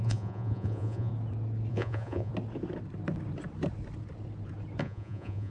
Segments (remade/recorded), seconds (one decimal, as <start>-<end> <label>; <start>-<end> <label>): 0.0-1.1 remade; 1.1-1.7 recorded; 1.7-2.3 remade; 2.3-4.8 recorded; 4.8-5.5 remade